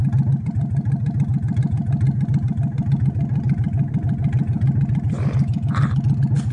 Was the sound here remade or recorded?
recorded